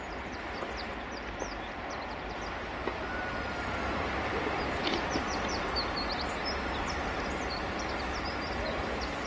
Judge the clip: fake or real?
real